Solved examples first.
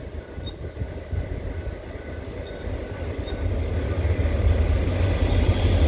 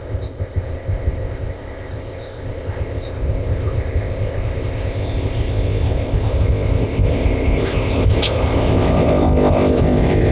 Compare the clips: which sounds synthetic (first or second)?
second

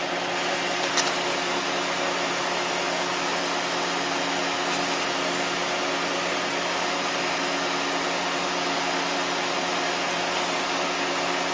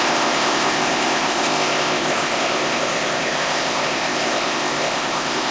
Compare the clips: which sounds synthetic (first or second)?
second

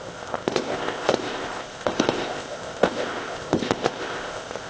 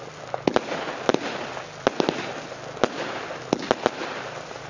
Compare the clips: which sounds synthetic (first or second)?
first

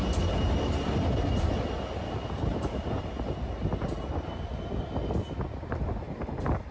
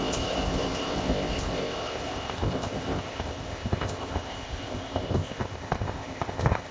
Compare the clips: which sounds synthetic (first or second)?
second